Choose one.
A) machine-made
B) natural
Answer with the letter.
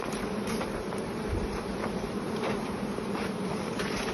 A